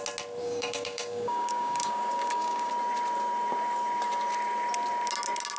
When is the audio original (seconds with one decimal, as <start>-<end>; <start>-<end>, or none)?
0.0-0.4; 2.7-5.6